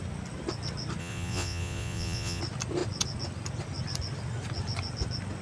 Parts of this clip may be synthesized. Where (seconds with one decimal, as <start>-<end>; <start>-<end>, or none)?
1.0-2.4